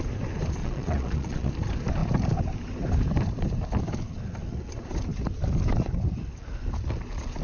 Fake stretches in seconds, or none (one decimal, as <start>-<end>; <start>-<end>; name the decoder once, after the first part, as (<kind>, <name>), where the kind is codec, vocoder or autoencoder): 0.6-1.5 (vocoder, Vocos)